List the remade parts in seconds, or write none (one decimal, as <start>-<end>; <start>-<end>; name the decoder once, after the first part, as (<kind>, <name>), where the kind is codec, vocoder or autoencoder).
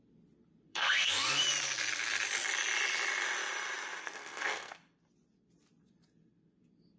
0.7-1.4 (codec, SNAC); 4.0-4.8